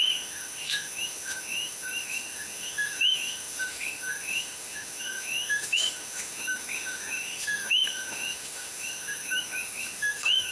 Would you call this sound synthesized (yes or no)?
yes